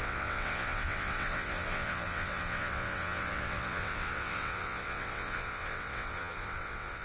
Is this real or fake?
fake